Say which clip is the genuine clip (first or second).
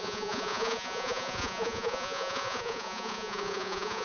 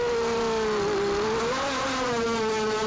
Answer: second